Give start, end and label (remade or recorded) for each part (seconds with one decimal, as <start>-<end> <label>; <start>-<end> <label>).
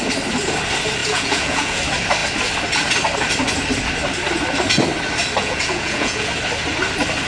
0.0-1.0 recorded; 1.0-1.8 remade; 1.8-5.4 recorded; 5.4-6.3 remade; 6.3-7.3 recorded